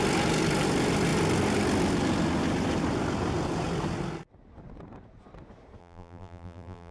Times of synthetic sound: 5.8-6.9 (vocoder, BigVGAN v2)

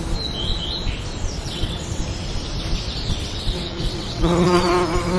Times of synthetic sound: 1.4-2.0 (vocoder, WaveNeXt); 3.2-4.7

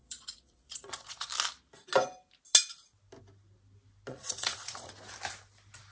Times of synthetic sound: 0.0-1.3 (vocoder, Vocos); 4.1-4.9

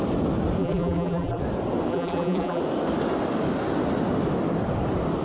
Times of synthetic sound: 0.6-1.4 (vocoder, BigVGAN v2); 1.9-2.6

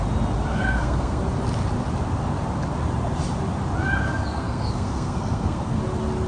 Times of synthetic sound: 0.5-1.2 (codec, SNAC); 4.2-5.8

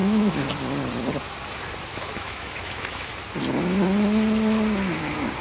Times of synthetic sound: 0.0-0.5 (autoencoder, DAC-VAE); 1.9-3.1

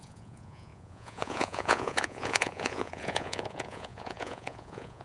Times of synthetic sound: 0.0-5.0 (vocoder, Vocos)

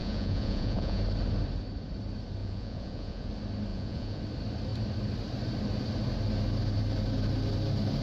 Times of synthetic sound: 0.0-1.0 (vocoder, Vocos); 2.4-3.3; 3.7-4.2